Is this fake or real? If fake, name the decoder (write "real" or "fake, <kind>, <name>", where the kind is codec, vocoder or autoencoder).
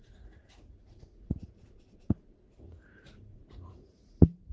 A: fake, vocoder, Vocos